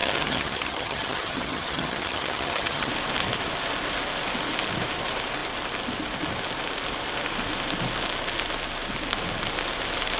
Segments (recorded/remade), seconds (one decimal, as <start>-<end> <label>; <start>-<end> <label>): 0.0-2.9 remade; 2.9-10.2 recorded